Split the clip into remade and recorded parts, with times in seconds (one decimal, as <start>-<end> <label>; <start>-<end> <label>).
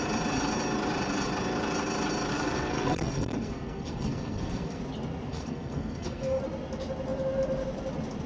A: 0.0-2.3 recorded; 2.3-4.8 remade; 4.8-5.3 recorded; 5.3-6.4 remade; 6.4-8.3 recorded